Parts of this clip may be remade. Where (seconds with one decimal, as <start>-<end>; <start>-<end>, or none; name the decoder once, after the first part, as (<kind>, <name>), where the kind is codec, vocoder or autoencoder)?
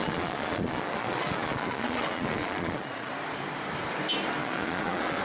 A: 0.0-3.1 (vocoder, Vocos); 4.4-5.2